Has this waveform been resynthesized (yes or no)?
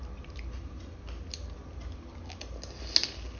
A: no